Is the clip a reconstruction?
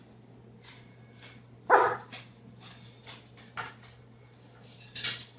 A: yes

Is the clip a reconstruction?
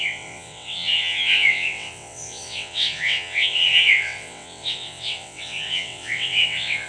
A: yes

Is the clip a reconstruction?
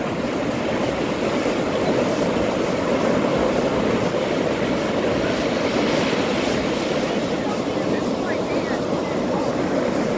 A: no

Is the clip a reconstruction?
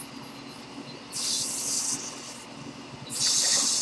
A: no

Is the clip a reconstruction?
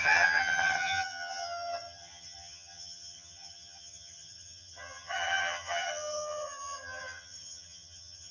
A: yes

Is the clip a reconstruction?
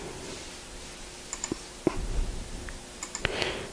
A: no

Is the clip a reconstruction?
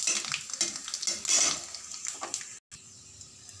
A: no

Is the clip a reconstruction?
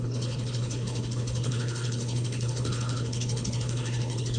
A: yes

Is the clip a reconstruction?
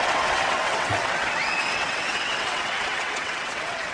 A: yes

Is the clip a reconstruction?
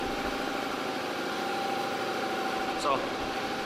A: yes